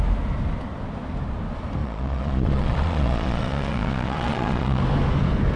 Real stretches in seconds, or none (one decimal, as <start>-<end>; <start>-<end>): 0.0-1.8; 4.8-5.6